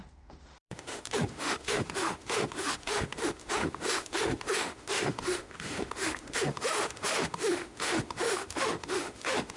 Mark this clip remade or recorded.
remade